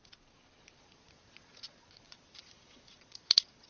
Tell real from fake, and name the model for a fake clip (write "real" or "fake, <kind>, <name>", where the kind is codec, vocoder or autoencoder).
fake, vocoder, Vocos